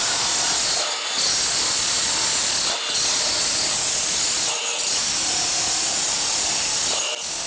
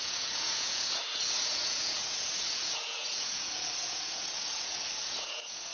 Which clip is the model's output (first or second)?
second